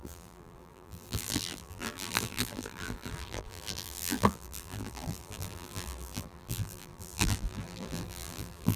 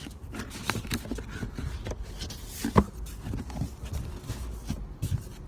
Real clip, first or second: second